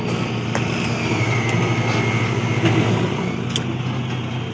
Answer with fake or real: real